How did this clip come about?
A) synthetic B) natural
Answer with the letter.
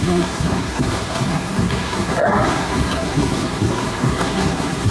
A